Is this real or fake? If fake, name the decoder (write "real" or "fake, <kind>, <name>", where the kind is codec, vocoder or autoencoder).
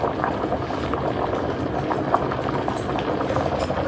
real